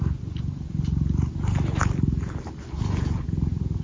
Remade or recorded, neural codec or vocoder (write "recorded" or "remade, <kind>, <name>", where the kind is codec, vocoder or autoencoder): recorded